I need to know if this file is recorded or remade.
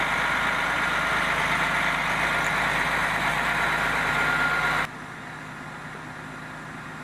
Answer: recorded